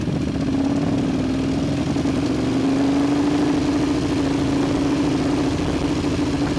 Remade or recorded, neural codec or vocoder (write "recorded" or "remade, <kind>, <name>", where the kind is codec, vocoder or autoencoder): recorded